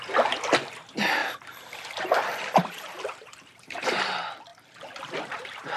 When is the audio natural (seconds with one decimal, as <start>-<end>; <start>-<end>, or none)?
0.0-1.2; 4.0-4.5